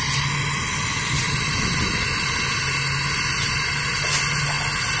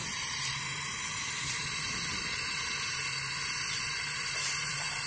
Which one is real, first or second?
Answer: first